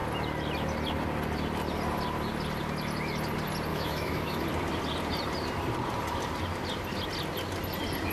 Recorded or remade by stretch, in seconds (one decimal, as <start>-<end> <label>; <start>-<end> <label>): 0.0-3.7 recorded; 3.7-4.4 remade; 4.4-8.1 recorded